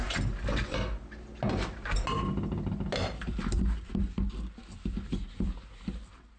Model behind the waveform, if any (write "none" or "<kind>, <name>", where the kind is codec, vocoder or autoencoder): none